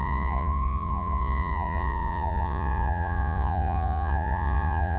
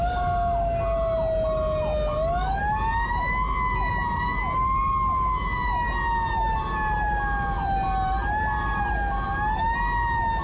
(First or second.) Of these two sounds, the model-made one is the first